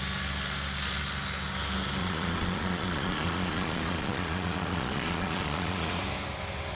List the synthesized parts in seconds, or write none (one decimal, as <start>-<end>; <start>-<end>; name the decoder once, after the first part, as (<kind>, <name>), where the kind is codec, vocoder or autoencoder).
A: 2.0-6.0 (vocoder, Vocos)